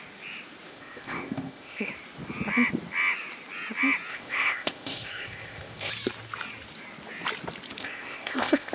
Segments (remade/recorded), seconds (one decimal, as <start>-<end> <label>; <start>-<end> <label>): 0.0-0.7 recorded; 0.7-1.9 remade; 1.9-4.1 recorded; 4.1-5.9 remade; 5.9-7.8 recorded; 7.8-8.7 remade